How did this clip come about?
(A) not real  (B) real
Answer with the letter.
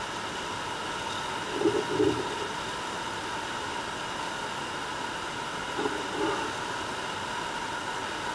B